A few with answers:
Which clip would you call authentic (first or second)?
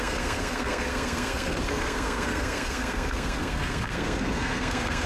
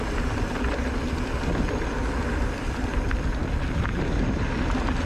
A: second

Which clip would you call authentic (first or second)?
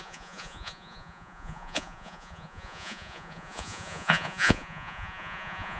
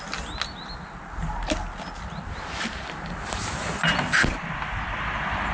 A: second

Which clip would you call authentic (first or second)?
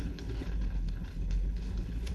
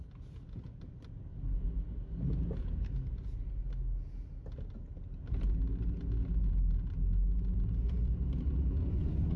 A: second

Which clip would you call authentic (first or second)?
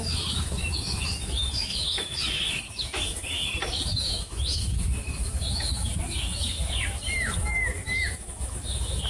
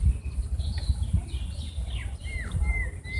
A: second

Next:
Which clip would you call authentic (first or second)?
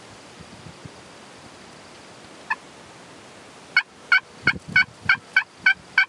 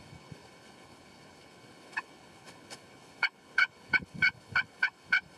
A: first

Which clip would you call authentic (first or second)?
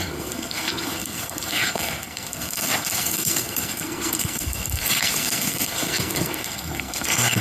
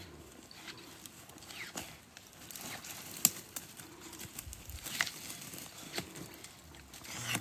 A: second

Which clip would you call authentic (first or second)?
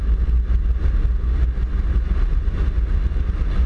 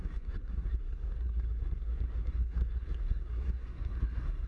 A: first